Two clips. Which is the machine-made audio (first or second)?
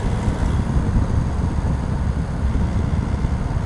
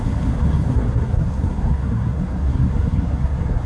second